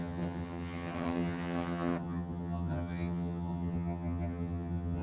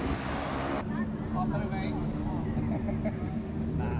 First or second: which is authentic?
second